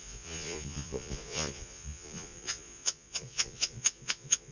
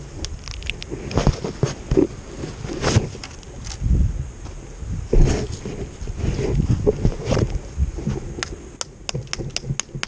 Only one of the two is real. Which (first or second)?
second